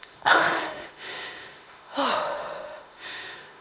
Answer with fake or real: fake